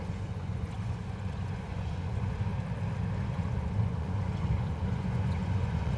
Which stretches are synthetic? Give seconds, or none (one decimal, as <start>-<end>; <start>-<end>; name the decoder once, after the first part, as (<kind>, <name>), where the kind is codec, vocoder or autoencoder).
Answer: 0.0-2.5 (vocoder, Vocos); 3.2-6.0